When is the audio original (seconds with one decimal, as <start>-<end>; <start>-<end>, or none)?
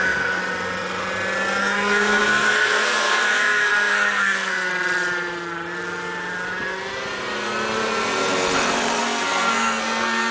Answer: 0.4-1.6; 4.7-9.0